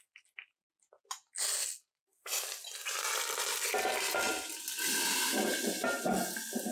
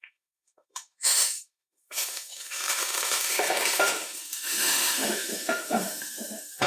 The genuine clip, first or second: first